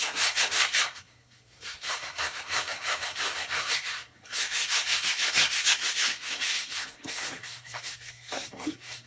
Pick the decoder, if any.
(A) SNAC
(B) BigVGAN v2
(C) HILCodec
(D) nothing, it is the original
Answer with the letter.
A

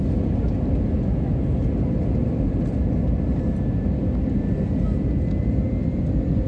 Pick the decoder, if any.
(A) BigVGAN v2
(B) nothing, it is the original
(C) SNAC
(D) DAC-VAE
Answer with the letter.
B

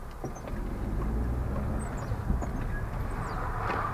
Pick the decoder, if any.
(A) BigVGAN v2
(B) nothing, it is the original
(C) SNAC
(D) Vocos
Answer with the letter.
B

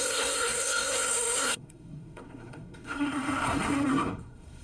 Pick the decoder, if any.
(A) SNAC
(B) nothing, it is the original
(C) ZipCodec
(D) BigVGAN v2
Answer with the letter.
A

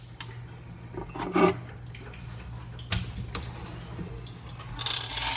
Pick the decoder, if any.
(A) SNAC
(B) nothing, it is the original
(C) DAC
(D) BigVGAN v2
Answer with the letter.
B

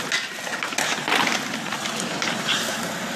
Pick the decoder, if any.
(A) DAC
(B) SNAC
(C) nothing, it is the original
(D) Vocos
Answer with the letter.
C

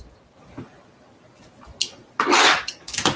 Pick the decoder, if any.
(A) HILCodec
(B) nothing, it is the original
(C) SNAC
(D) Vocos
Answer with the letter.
B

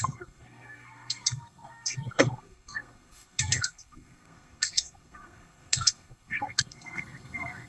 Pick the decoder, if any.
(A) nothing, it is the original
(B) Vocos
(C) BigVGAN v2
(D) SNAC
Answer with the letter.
D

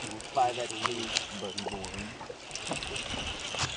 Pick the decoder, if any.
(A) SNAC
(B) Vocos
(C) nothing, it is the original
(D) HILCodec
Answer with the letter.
C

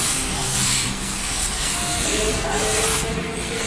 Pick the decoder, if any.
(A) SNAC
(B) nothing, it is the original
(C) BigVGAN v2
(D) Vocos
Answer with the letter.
A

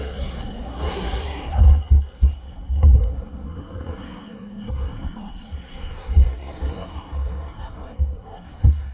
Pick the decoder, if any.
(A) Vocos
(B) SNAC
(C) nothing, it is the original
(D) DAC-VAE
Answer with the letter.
B